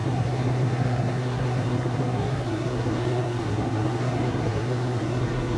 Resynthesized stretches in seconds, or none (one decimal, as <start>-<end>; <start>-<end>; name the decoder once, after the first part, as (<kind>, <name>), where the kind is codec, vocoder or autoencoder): 0.0-5.6 (codec, SNAC)